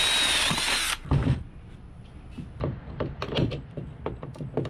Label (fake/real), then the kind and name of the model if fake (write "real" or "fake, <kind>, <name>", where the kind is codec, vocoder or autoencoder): real